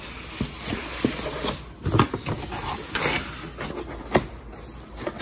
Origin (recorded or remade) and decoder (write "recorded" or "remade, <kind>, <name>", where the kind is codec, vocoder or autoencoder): recorded